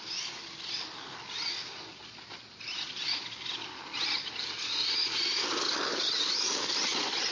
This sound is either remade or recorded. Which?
recorded